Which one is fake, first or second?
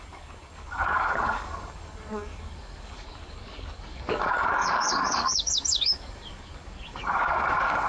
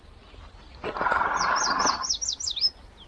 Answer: first